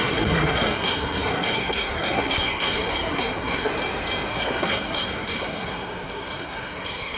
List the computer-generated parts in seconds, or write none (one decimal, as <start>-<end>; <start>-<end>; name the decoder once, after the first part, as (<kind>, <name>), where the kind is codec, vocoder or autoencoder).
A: 0.0-3.7 (codec, SNAC); 4.3-7.2